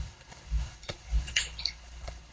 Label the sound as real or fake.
fake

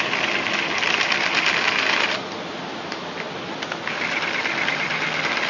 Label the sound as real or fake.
real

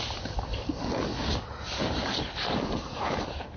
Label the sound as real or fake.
real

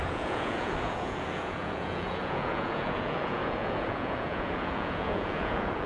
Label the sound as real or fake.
fake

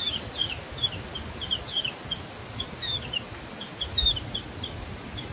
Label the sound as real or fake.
real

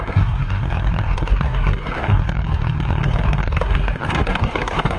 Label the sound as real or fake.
fake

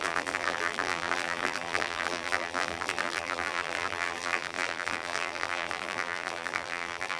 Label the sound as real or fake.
fake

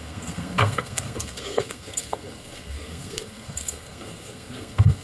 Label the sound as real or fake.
fake